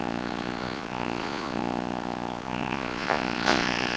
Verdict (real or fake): fake